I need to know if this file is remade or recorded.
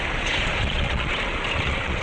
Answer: remade